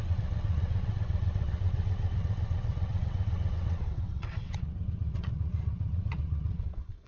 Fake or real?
fake